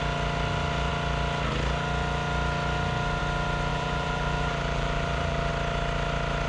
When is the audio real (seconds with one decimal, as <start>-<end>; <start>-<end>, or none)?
0.0-3.7; 5.5-6.5

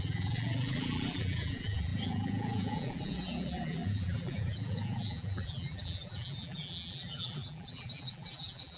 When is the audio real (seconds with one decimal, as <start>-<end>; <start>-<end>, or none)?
none

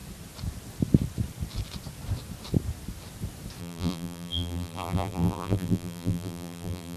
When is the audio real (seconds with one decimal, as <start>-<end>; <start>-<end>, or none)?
0.0-3.6